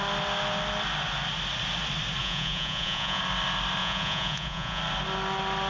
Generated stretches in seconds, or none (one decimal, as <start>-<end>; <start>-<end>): 2.2-3.2; 3.8-4.8